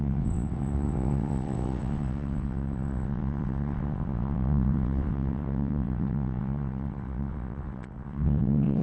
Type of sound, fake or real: fake